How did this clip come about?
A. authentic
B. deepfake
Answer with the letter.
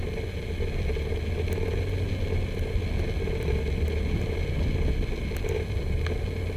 A